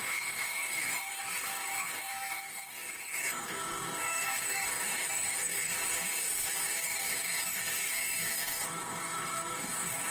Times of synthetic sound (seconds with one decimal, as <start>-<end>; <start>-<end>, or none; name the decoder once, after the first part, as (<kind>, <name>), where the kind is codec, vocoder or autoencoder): 0.0-10.1 (codec, DAC)